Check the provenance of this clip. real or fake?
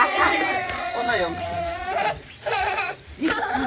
fake